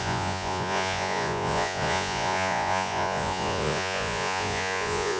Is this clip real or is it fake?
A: fake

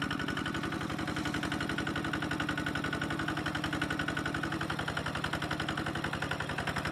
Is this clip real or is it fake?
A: real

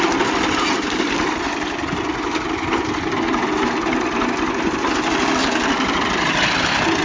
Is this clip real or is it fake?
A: real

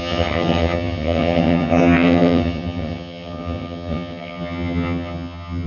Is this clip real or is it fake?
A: fake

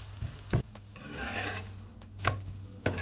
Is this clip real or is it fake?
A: real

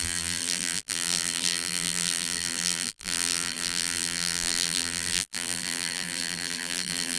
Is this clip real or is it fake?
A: fake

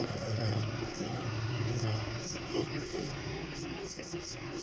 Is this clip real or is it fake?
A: fake